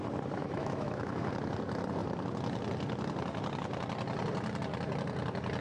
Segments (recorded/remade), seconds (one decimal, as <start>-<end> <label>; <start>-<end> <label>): 0.0-0.4 recorded; 0.4-1.3 remade; 1.3-5.6 recorded